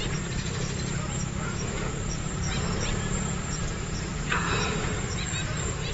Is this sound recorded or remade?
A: remade